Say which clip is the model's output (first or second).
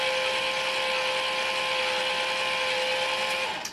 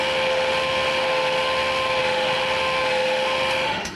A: second